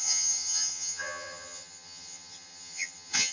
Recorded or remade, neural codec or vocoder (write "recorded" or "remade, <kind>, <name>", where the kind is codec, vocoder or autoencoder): remade, vocoder, HiFi-GAN